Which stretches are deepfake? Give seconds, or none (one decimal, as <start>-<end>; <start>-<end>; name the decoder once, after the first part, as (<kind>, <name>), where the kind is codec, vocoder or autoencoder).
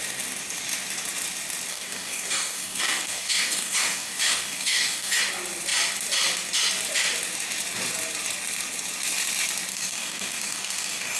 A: 1.7-5.2 (codec, DAC); 9.7-11.2